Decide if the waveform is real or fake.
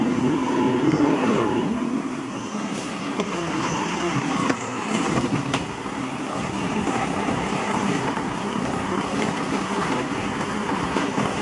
fake